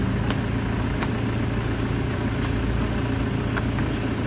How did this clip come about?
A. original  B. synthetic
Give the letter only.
A